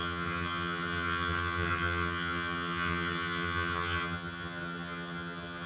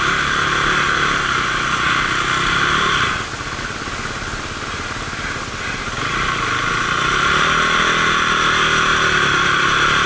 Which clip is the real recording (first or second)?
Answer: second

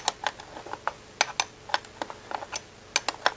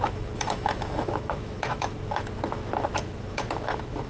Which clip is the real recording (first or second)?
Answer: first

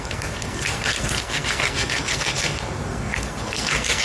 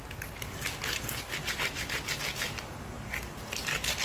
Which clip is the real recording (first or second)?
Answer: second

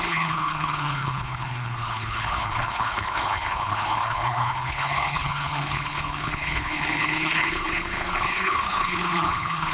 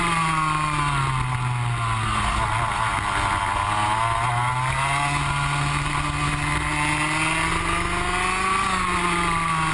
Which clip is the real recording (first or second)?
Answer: second